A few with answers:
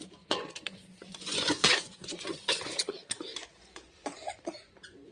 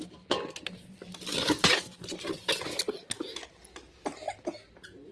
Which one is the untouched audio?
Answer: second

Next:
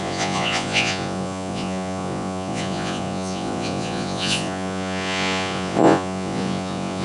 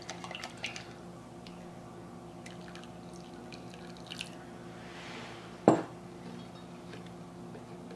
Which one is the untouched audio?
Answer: second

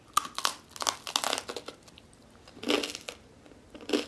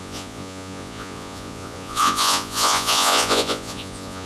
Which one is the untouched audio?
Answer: first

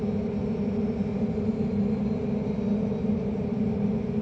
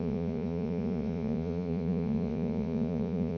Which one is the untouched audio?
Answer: first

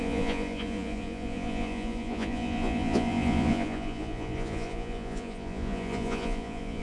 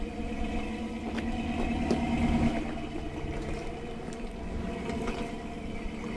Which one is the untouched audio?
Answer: second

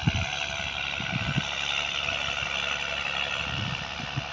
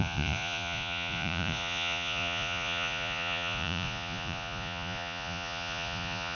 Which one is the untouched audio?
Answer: first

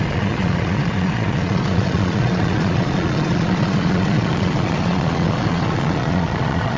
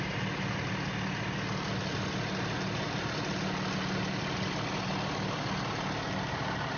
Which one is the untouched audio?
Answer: second